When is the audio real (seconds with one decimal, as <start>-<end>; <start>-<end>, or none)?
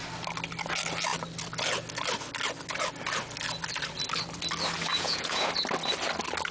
0.0-4.9; 5.5-6.5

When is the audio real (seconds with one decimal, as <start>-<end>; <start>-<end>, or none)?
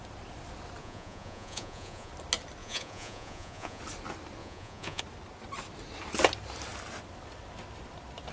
0.0-0.8; 2.1-2.6; 3.8-4.4; 5.0-8.3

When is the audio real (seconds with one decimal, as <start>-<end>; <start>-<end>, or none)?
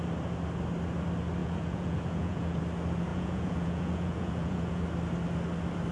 0.0-1.4; 2.6-3.1; 4.8-5.9